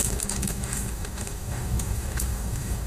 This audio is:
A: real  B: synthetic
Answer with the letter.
B